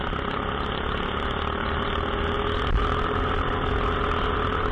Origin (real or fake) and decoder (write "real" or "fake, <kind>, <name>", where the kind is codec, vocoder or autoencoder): real